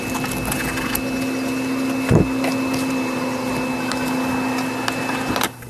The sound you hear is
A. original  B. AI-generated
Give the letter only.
A